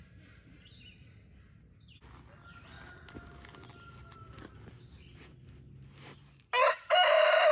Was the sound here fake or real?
real